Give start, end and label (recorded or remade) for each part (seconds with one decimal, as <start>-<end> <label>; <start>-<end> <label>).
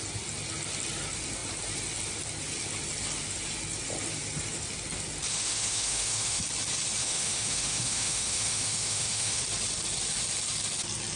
0.0-5.3 recorded; 5.3-6.4 remade; 6.4-7.0 recorded; 7.0-9.4 remade; 9.4-11.2 recorded